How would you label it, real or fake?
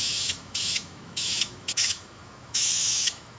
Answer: fake